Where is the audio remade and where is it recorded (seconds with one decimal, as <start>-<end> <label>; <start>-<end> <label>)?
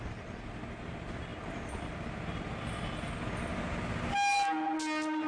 0.0-5.3 recorded